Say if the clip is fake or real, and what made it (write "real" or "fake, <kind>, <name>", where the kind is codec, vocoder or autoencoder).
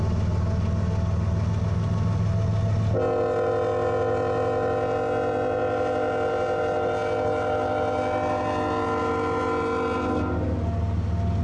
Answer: real